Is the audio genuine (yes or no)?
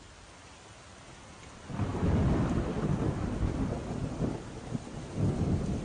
yes